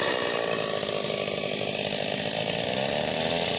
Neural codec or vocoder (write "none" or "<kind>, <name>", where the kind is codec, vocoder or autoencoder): none